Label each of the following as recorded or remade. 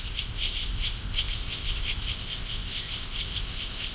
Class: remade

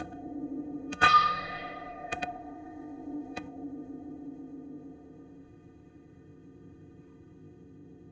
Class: remade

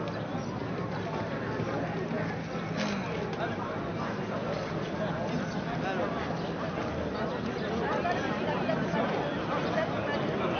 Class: recorded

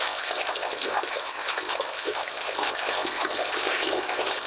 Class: remade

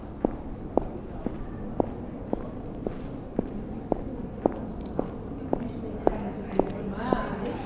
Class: recorded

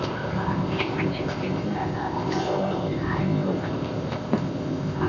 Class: remade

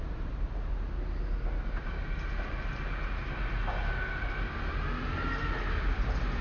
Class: recorded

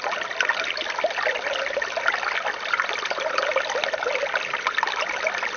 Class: recorded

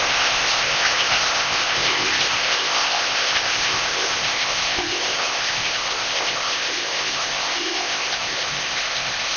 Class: remade